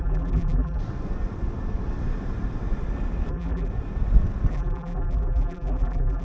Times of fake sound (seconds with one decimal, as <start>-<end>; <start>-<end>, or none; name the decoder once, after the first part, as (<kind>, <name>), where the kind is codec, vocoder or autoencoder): 0.0-0.8 (vocoder, BigVGAN v2); 3.3-3.7; 4.5-6.2